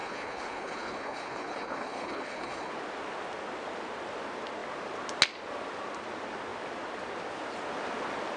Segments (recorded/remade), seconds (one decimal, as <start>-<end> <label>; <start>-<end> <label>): 0.0-2.7 remade; 2.7-8.4 recorded